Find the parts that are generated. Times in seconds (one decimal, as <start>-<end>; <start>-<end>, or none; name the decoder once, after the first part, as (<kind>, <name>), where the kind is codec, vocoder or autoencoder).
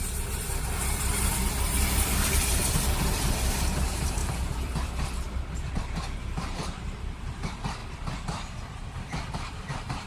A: 0.0-4.2 (vocoder, BigVGAN v2); 5.8-7.8; 9.7-10.1